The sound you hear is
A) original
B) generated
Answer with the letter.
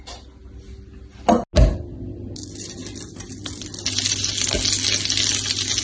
A